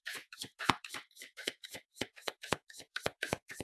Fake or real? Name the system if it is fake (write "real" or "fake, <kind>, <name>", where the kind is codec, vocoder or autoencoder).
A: fake, autoencoder, DAC-VAE